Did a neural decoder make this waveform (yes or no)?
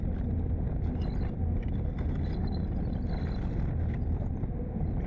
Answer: no